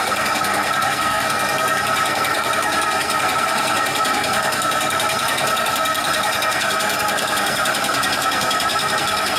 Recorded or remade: remade